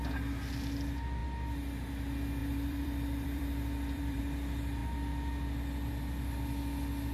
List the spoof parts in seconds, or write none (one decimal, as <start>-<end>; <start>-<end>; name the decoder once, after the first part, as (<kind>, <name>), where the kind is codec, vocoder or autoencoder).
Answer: 2.4-4.2 (vocoder, BigVGAN v2)